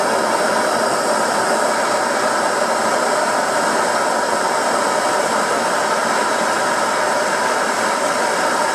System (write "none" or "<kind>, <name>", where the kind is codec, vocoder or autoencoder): vocoder, BigVGAN v2